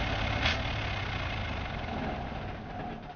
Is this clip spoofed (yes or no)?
no